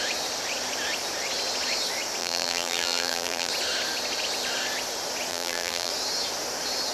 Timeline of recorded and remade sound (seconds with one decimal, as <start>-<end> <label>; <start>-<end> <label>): 0.0-2.2 recorded; 2.2-3.5 remade; 3.5-5.3 recorded; 5.3-5.9 remade; 5.9-6.9 recorded